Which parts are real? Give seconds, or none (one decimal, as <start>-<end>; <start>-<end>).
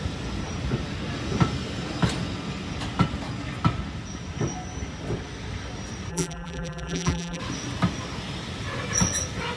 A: 0.0-6.1; 7.4-9.6